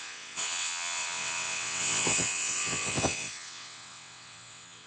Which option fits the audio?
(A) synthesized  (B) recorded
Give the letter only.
A